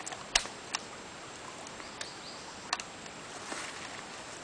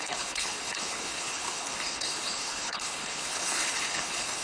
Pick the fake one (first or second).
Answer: second